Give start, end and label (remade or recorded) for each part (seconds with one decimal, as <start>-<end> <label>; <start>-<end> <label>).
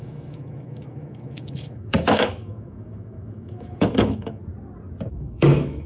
0.0-4.4 remade; 4.4-5.1 recorded; 5.1-5.9 remade